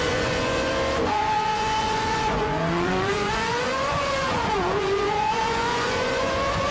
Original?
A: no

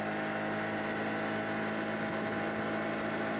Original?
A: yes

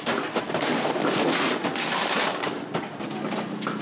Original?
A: yes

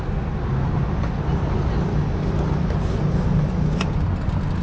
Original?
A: yes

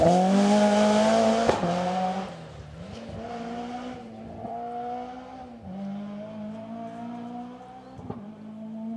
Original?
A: yes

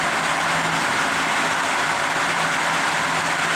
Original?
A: yes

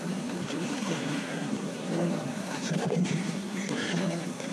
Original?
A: no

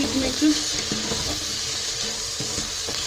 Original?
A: yes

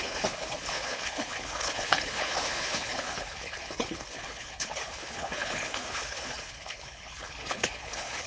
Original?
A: no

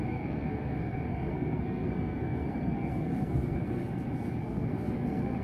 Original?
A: no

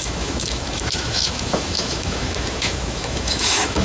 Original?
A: no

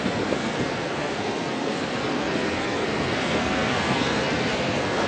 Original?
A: no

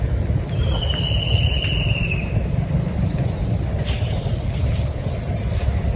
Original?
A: no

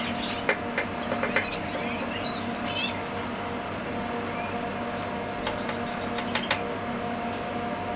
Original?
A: yes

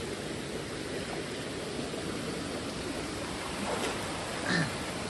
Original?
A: yes